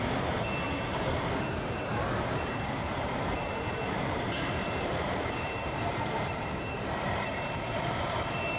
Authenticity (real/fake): fake